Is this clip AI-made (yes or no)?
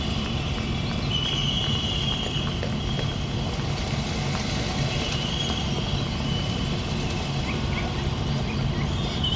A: no